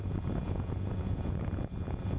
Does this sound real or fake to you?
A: fake